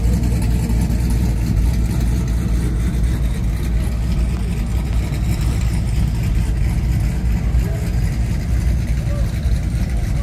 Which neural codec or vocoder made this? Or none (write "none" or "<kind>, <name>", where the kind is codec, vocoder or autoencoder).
none